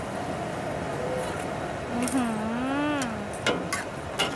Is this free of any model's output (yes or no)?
yes